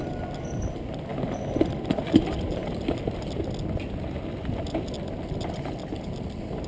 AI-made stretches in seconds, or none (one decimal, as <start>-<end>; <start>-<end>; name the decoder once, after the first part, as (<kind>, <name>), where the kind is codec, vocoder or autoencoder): none